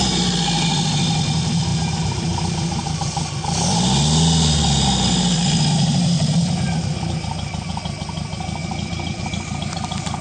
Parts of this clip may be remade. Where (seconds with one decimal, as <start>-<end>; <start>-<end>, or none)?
none